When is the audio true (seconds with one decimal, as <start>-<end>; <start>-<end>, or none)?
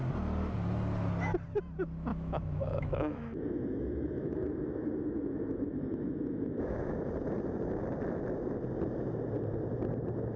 0.0-2.1; 7.1-10.4